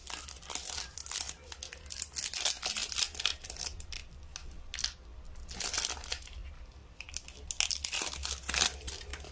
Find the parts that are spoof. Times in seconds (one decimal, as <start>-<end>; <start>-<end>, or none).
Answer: none

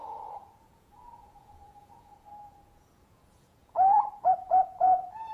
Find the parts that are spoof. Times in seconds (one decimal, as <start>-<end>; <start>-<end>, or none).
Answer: 0.0-5.3

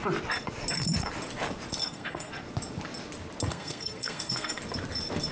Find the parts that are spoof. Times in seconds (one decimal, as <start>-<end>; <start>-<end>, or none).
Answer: 1.8-2.3; 3.5-4.6

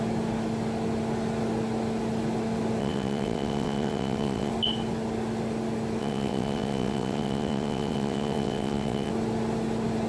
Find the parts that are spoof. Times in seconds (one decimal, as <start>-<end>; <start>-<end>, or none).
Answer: 2.8-4.5; 6.0-9.1

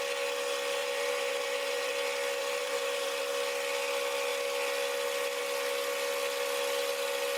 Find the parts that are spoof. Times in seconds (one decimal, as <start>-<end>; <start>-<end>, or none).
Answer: 0.8-1.9; 2.4-3.2

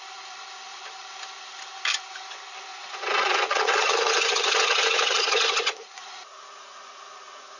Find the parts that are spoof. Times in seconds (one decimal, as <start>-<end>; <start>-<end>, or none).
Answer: 2.7-7.6